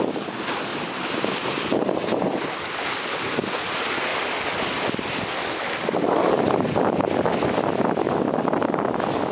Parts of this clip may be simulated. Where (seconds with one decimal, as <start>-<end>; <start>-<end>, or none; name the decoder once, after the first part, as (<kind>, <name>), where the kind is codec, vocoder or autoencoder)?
0.7-2.1 (vocoder, BigVGAN v2)